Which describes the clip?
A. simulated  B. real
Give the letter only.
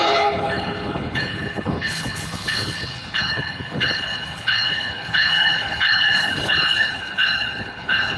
A